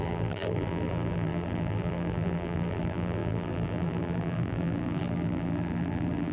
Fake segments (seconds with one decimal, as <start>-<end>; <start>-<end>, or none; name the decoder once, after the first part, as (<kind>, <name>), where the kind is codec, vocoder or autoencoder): 0.0-6.3 (vocoder, BigVGAN v2)